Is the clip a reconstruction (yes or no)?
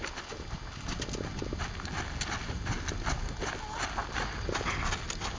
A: no